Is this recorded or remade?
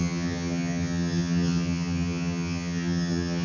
remade